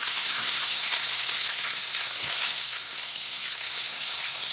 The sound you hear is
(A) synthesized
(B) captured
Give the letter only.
A